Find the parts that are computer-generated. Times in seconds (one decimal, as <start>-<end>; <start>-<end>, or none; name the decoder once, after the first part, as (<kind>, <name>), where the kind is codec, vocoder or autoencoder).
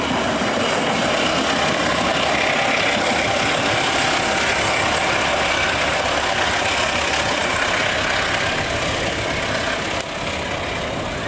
none